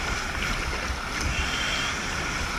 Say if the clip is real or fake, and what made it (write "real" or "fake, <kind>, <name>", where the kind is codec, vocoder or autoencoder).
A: real